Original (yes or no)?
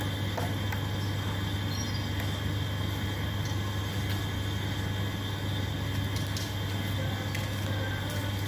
yes